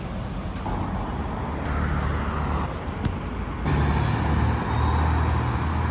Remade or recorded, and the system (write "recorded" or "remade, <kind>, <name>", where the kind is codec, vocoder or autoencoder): recorded